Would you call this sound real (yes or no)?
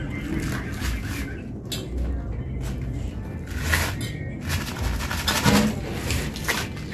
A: yes